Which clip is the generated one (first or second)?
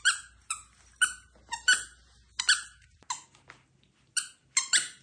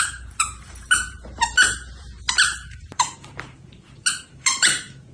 second